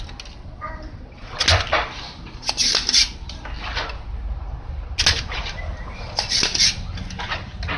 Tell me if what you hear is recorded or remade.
recorded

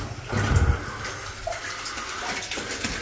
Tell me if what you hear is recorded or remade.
recorded